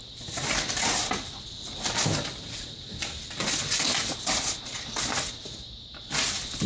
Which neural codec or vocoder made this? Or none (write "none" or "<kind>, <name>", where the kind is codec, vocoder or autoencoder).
none